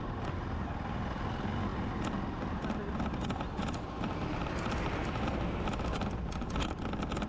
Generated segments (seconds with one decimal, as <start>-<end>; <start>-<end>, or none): none